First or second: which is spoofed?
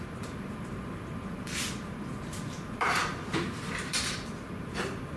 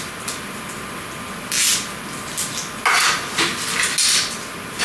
first